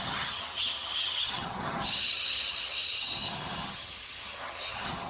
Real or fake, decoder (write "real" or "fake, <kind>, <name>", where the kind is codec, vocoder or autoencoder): fake, vocoder, HiFi-GAN